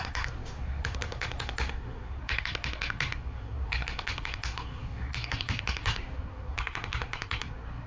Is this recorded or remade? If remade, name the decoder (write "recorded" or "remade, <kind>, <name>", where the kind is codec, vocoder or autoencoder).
remade, codec, SNAC